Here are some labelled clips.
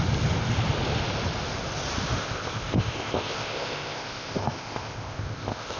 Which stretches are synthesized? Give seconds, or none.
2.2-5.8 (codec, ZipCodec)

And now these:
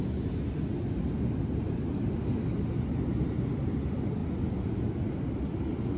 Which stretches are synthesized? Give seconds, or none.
none